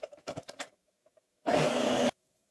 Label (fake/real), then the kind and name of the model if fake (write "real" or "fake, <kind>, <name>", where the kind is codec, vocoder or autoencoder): fake, codec, DAC